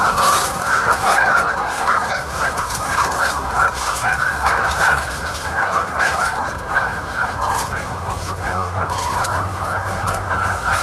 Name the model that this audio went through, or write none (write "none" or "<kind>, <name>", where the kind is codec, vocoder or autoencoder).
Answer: codec, SNAC